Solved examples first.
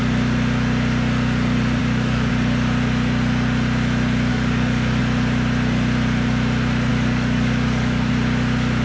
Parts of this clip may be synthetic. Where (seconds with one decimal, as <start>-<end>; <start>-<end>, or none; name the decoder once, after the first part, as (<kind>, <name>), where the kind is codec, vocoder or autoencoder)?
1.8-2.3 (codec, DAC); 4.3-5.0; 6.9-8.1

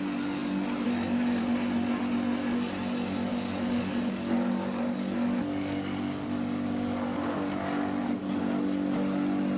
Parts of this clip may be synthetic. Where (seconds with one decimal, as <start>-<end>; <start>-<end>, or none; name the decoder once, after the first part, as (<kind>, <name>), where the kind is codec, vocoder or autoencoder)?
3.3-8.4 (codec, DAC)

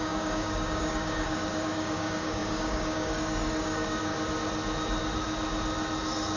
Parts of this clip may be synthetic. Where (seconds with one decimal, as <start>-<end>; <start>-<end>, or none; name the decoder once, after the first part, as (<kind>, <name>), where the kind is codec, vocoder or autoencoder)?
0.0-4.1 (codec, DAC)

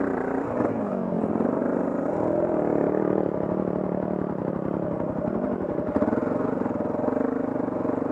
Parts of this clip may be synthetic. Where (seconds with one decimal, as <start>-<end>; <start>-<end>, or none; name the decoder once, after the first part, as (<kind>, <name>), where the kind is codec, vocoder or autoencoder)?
0.7-1.2 (codec, DAC)